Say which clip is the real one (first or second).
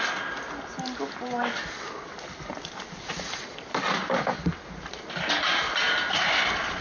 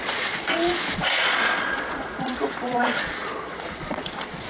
first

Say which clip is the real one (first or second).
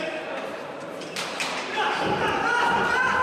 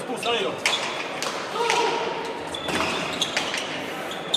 second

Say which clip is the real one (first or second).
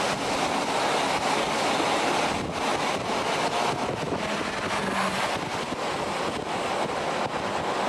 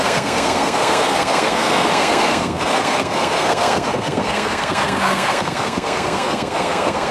first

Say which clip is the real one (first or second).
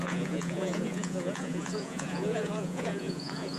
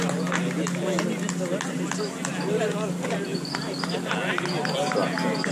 second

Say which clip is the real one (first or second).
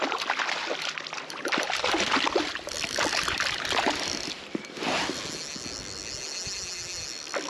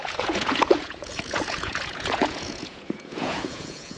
first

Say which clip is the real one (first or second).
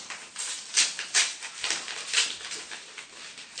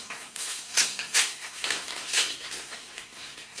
first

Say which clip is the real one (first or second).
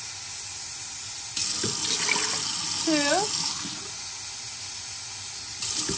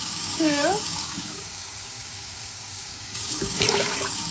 first